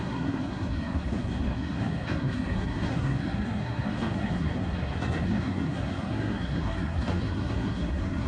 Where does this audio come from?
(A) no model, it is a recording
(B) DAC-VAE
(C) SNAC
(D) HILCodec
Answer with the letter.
C